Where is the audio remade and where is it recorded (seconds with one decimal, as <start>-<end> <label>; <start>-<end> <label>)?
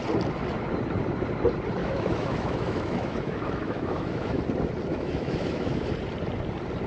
0.0-1.8 recorded; 1.8-4.4 remade; 4.4-4.9 recorded; 4.9-5.9 remade; 5.9-6.9 recorded